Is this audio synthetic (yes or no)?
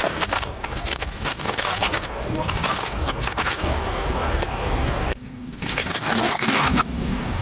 yes